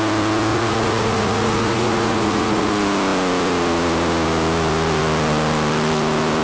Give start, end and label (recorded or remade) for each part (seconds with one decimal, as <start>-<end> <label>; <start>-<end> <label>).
0.0-0.5 recorded; 0.5-2.7 remade; 2.7-6.4 recorded